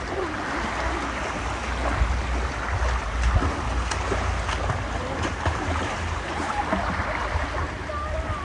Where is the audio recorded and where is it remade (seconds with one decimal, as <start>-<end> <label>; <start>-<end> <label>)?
0.0-5.3 recorded; 5.3-7.0 remade; 7.0-8.4 recorded